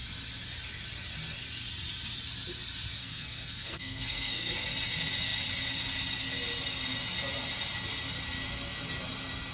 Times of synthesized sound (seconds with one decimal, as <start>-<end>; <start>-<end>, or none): 3.0-4.5